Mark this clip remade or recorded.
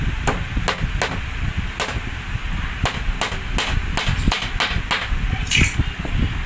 recorded